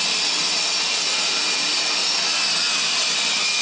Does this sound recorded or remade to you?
recorded